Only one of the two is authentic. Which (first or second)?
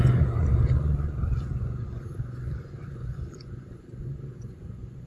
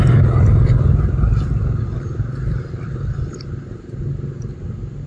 second